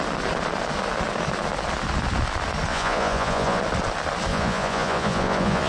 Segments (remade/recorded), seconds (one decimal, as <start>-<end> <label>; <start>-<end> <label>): 0.0-2.7 recorded; 2.7-3.6 remade; 3.6-4.3 recorded; 4.3-5.7 remade